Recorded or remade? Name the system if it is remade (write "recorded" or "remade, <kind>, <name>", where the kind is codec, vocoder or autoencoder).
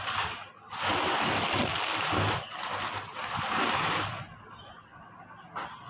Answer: recorded